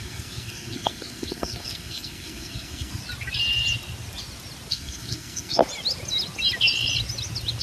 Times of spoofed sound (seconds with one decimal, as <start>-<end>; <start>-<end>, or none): 0.0-3.0; 4.7-5.6